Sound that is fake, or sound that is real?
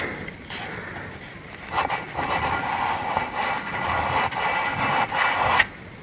real